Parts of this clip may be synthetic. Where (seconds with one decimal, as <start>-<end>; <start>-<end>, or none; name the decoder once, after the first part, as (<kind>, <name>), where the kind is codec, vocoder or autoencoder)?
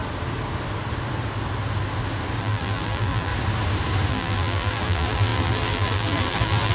2.4-3.3 (vocoder, BigVGAN v2); 4.1-6.7